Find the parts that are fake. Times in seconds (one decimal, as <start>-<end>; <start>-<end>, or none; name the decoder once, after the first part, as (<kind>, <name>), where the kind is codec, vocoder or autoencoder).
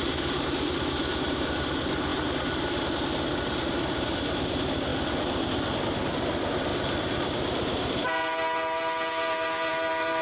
0.0-4.9 (vocoder, BigVGAN v2); 5.8-10.2